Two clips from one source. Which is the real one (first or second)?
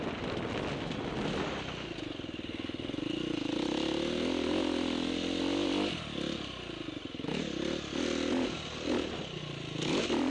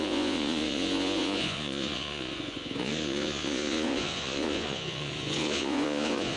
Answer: first